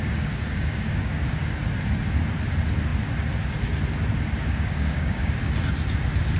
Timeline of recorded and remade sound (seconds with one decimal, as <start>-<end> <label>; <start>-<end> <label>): 0.0-1.6 remade; 1.6-4.4 recorded; 4.4-5.5 remade; 5.5-6.4 recorded